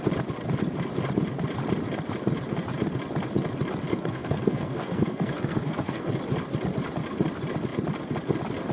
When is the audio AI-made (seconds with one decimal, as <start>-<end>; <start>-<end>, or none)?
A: 3.9-6.1